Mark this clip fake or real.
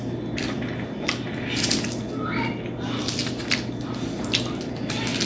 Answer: real